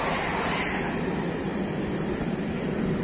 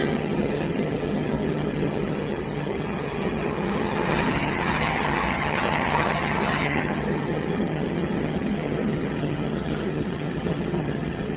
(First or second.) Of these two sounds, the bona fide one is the first